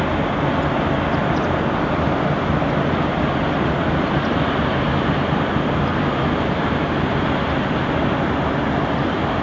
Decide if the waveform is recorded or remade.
recorded